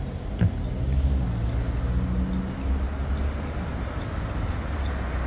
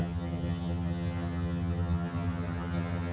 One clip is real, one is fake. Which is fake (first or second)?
second